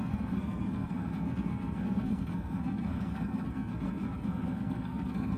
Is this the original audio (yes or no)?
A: no